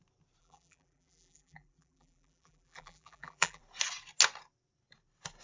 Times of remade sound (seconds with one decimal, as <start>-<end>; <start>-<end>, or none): 0.4-3.6